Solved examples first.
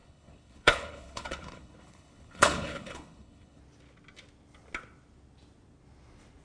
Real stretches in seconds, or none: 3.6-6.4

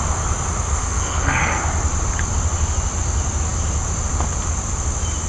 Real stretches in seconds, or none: 0.0-0.7; 1.6-5.3